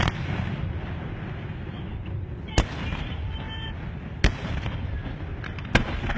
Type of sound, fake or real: real